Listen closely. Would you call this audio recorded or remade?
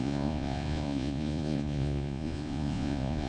remade